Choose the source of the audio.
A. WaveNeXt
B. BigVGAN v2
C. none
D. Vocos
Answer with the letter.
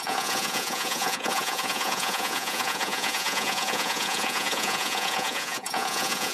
D